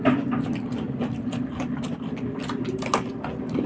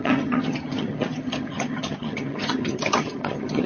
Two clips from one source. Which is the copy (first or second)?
second